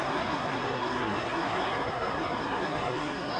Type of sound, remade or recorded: remade